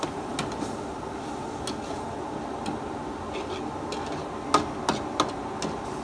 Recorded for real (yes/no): yes